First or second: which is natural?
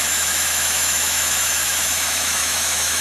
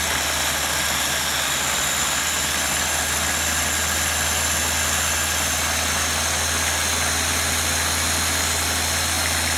second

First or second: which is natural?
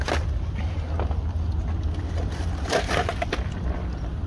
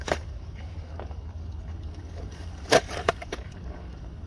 first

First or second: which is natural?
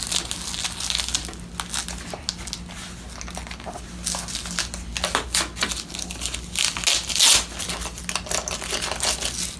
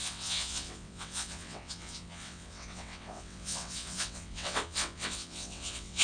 first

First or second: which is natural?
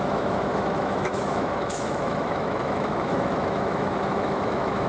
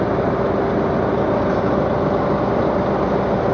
second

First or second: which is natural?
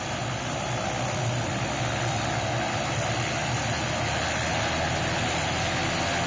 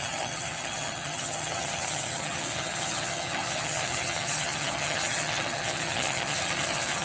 first